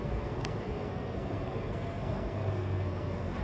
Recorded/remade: remade